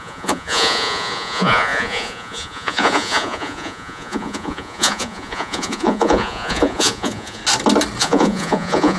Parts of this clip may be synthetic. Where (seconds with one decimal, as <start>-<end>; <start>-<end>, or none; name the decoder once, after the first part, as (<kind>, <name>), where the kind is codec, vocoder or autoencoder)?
0.0-7.4 (vocoder, Vocos); 8.0-9.0